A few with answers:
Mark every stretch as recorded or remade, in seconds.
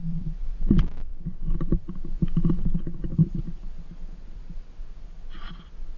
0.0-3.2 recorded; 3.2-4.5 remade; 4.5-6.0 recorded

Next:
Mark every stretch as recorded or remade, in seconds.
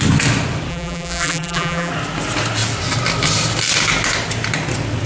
0.0-0.7 recorded; 0.7-1.9 remade; 1.9-5.1 recorded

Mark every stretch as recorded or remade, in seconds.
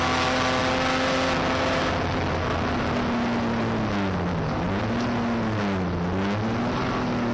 0.0-7.3 recorded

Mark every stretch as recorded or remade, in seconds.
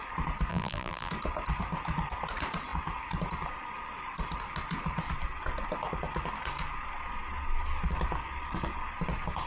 0.0-0.5 recorded; 0.5-1.1 remade; 1.1-9.5 recorded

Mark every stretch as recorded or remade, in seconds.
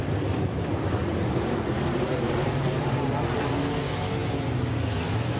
0.0-1.0 recorded; 1.0-3.5 remade; 3.5-5.4 recorded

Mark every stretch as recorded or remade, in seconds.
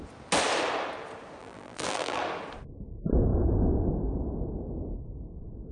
0.0-1.4 recorded; 1.4-2.2 remade; 2.2-5.7 recorded